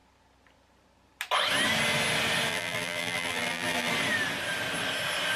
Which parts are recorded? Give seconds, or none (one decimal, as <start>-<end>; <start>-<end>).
0.0-2.5; 3.9-5.4